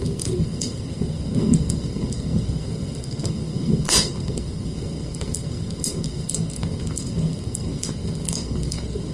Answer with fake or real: fake